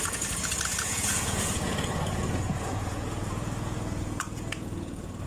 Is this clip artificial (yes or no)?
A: yes